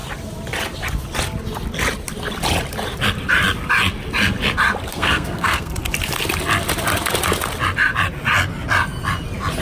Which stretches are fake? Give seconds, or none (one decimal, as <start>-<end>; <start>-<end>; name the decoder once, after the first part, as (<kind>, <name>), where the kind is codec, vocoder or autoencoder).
4.9-5.7 (codec, SNAC)

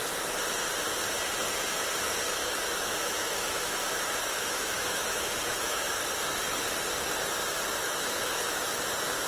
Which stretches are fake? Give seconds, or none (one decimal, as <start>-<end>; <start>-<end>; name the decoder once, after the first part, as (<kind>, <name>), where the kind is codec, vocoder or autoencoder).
2.4-6.0 (autoencoder, DAC-VAE); 7.8-8.5

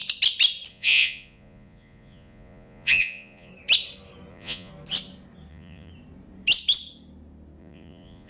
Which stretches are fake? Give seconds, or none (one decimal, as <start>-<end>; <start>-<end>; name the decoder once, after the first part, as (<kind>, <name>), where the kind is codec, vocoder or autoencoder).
0.7-3.5 (vocoder, Vocos); 4.3-4.7; 5.5-5.9; 7.6-8.3

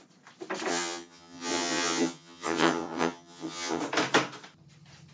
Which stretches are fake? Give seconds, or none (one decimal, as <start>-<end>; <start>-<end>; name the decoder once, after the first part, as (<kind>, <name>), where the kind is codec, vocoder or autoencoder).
0.7-3.8 (vocoder, HiFi-GAN)

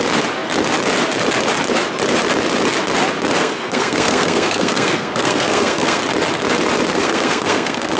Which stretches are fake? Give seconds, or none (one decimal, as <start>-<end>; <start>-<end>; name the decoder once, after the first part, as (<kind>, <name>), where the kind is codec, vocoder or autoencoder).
3.4-6.0 (codec, SNAC); 6.9-8.0

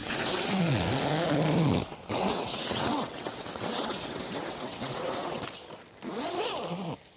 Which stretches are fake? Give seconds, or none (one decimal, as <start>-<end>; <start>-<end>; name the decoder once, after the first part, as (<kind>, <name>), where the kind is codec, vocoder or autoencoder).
0.0-0.6 (vocoder, WaveNeXt); 1.9-5.4